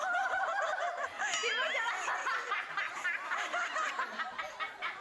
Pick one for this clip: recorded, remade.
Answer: recorded